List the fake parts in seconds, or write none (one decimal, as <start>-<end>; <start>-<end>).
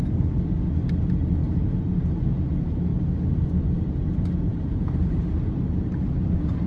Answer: 4.5-5.3